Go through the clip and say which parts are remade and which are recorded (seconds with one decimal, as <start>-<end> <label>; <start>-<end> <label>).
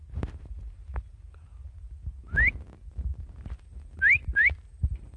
0.0-1.5 remade; 1.5-3.6 recorded; 3.6-5.2 remade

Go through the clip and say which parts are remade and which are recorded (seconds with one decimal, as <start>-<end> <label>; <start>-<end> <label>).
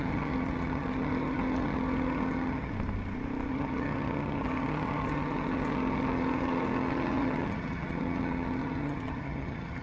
0.0-2.7 remade; 2.7-3.5 recorded; 3.5-9.8 remade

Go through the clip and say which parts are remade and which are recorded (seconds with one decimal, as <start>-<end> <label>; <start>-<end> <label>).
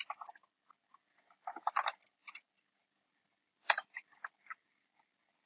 0.0-5.5 recorded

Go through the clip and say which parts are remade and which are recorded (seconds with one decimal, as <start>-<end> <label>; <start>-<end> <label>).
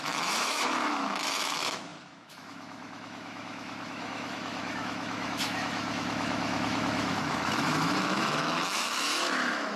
0.0-9.8 remade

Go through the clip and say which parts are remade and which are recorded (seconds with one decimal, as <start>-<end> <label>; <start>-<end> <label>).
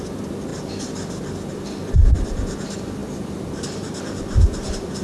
0.0-5.0 recorded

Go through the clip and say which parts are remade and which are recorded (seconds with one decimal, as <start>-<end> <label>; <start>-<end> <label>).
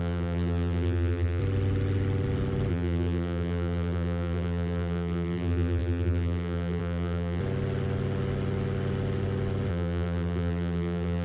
0.0-1.4 remade; 1.4-2.7 recorded; 2.7-7.4 remade; 7.4-9.7 recorded; 9.7-11.2 remade